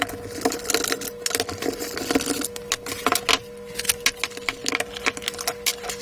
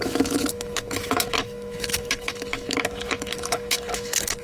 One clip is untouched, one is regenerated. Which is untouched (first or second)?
first